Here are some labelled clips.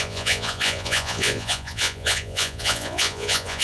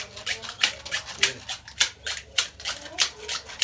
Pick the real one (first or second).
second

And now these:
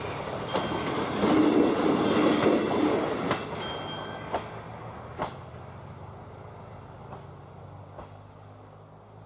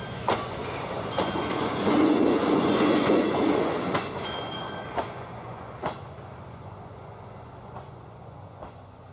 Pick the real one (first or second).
first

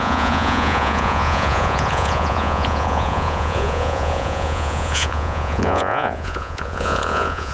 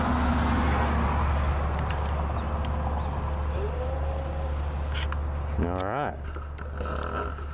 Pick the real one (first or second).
second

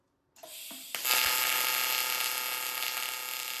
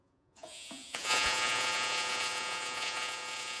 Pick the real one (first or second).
first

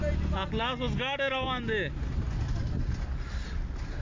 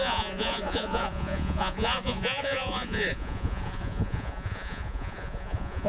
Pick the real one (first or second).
first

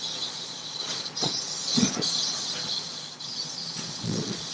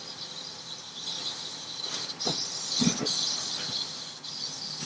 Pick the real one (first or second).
second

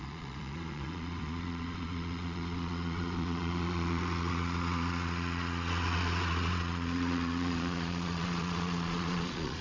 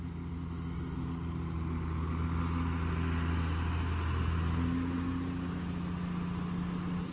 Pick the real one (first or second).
second